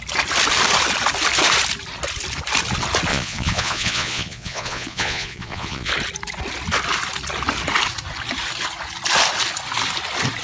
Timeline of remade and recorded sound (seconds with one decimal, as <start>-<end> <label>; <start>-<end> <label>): 0.0-3.1 recorded; 3.1-5.9 remade; 5.9-10.4 recorded